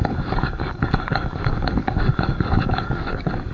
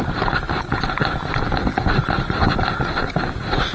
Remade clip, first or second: first